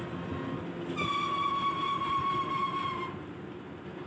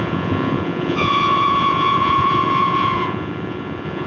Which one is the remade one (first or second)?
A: second